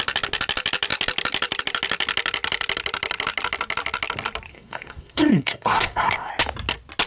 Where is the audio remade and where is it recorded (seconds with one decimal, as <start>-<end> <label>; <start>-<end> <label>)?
0.0-4.5 recorded; 4.5-6.3 remade; 6.3-7.1 recorded